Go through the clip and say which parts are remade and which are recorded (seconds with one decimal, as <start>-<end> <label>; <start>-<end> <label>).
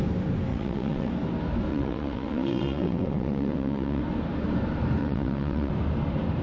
0.0-0.5 recorded; 0.5-1.1 remade; 1.1-1.7 recorded; 1.7-4.0 remade; 4.0-5.0 recorded; 5.0-5.7 remade; 5.7-6.4 recorded